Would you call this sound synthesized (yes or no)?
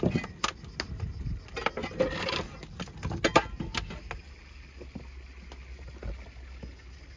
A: no